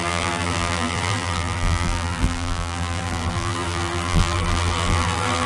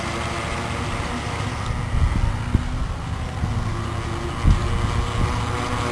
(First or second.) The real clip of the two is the second